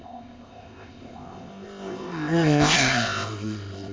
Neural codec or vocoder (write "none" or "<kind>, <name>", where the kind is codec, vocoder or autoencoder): codec, ZipCodec